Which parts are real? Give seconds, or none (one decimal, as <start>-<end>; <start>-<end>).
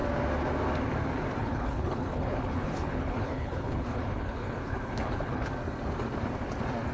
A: 0.0-1.4; 5.5-6.9